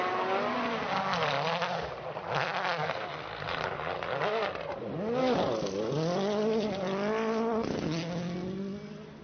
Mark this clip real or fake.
real